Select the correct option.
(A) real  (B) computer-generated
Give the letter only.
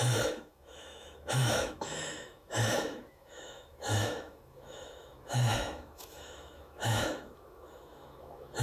B